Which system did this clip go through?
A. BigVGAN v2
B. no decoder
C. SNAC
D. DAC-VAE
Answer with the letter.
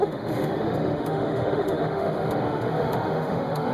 D